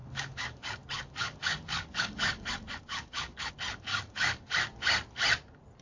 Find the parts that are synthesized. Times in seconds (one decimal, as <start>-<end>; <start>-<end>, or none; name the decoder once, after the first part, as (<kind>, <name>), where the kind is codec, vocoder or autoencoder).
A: 0.0-3.5 (codec, DAC); 3.9-4.5